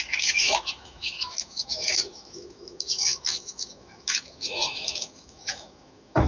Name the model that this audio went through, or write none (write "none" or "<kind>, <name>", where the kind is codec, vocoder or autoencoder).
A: autoencoder, DAC-VAE